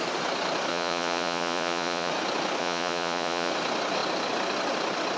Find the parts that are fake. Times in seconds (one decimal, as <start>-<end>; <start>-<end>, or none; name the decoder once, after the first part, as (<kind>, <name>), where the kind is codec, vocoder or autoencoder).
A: 0.7-2.1 (vocoder, Vocos); 2.6-3.5